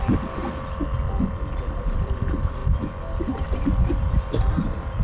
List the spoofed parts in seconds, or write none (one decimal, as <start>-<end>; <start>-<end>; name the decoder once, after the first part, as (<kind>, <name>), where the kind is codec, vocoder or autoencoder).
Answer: 0.0-0.4 (vocoder, BigVGAN v2); 1.3-5.0